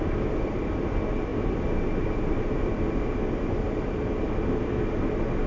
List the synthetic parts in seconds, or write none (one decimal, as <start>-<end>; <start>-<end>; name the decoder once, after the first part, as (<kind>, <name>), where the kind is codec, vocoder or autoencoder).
none